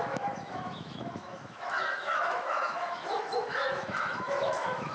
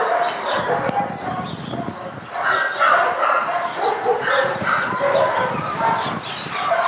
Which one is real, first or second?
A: second